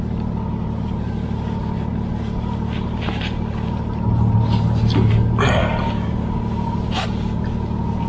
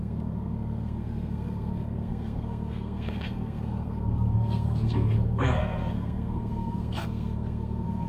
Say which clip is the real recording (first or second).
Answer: first